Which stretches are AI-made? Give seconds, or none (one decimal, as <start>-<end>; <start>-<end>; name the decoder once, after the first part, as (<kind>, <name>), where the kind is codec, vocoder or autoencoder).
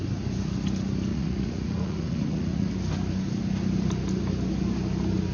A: 1.1-2.7 (vocoder, Vocos)